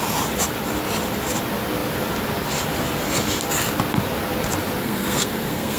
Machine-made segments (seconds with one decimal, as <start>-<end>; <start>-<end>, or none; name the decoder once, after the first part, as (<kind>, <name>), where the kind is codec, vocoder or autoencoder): 4.8-5.8 (codec, SNAC)